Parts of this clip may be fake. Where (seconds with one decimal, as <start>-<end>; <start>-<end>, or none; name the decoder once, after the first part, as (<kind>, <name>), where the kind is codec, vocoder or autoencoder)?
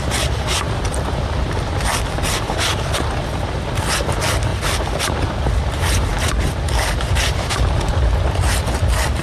none